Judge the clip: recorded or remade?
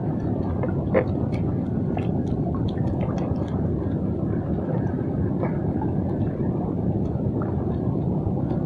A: recorded